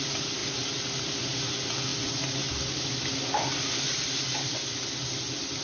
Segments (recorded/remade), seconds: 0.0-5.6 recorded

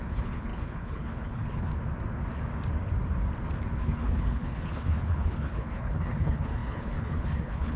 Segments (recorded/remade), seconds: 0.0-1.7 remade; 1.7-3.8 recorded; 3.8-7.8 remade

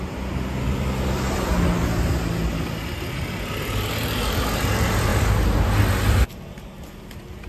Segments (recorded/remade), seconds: 0.0-7.5 recorded

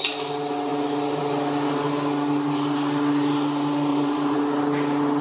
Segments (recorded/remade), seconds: 0.0-3.9 recorded; 3.9-4.4 remade; 4.4-5.2 recorded

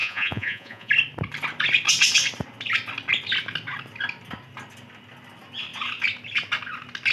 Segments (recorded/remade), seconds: 0.0-0.9 remade; 0.9-7.1 recorded

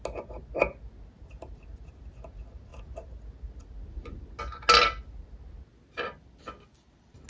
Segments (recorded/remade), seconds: 0.0-7.3 recorded